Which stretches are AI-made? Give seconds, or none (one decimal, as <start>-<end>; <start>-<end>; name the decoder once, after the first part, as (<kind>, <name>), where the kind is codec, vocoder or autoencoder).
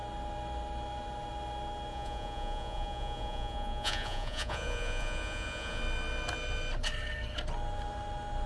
1.9-5.8 (vocoder, Vocos)